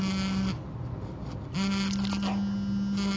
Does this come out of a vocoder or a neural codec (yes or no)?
no